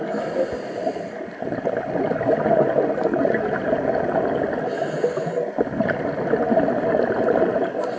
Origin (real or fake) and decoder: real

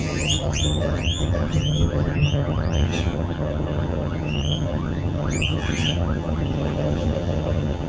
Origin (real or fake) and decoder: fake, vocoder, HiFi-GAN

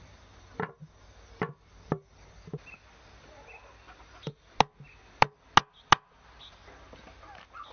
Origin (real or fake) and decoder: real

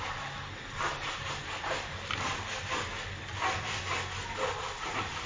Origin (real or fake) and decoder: real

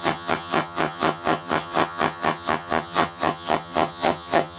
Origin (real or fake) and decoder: fake, vocoder, HiFi-GAN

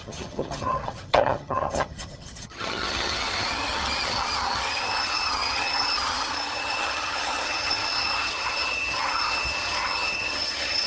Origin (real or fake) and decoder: fake, vocoder, HiFi-GAN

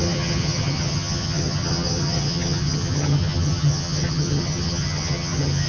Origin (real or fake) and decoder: fake, vocoder, HiFi-GAN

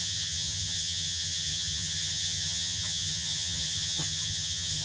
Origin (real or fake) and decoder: fake, vocoder, HiFi-GAN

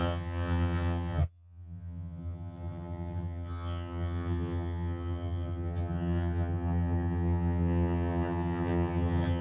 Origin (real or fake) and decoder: fake, vocoder, HiFi-GAN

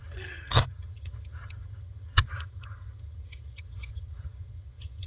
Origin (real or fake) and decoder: fake, vocoder, HiFi-GAN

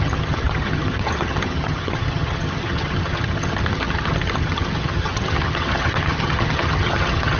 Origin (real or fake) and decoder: fake, vocoder, HiFi-GAN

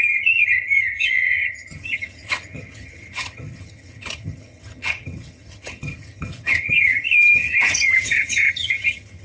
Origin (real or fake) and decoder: fake, vocoder, HiFi-GAN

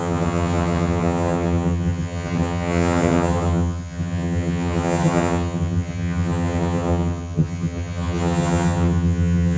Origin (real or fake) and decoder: fake, vocoder, HiFi-GAN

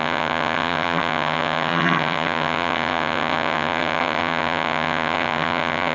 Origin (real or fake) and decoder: fake, vocoder, HiFi-GAN